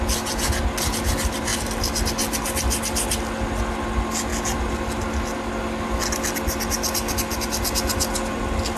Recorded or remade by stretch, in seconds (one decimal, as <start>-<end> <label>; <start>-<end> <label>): 0.0-8.8 recorded